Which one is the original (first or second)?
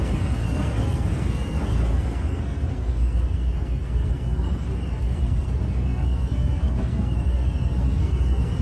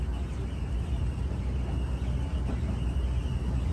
second